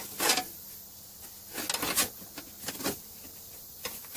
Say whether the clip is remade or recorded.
recorded